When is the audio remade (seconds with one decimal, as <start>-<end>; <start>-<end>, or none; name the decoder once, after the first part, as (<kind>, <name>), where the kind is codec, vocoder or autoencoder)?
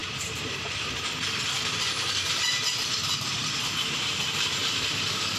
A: 0.0-0.8 (vocoder, BigVGAN v2); 4.6-5.4